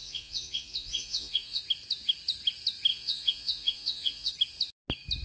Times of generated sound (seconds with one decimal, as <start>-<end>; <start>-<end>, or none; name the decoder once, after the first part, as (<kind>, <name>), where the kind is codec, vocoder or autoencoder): 0.0-1.6 (vocoder, Vocos); 2.9-4.3